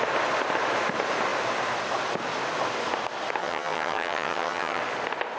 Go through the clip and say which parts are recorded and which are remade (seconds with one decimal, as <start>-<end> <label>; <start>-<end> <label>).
0.0-3.4 recorded; 3.4-4.8 remade; 4.8-5.4 recorded